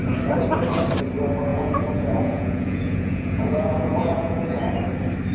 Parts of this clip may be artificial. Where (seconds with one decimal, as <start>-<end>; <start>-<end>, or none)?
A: 1.5-4.7

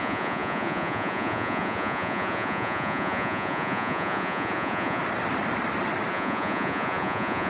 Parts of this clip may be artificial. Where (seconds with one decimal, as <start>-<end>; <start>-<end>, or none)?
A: 0.0-5.0; 6.1-7.5

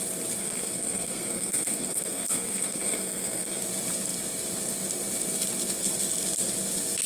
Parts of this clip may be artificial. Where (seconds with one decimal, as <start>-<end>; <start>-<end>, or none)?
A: 0.4-3.6

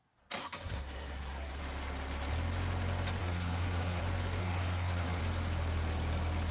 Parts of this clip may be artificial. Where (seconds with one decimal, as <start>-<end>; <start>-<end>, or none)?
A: 0.4-1.6; 3.2-4.0; 4.4-5.2

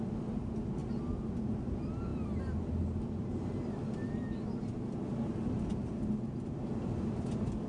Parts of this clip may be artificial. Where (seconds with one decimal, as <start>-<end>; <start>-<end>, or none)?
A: none

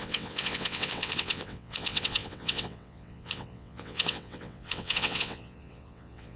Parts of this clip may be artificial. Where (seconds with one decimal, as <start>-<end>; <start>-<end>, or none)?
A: 0.0-6.4

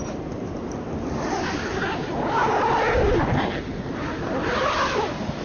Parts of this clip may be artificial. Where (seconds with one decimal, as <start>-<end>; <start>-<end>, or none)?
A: none

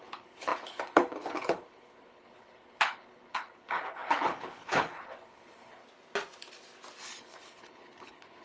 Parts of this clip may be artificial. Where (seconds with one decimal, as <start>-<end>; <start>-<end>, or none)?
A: 0.0-5.8; 7.0-8.4